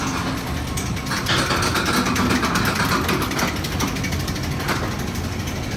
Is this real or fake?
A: real